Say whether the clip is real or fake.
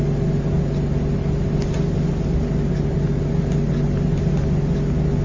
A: real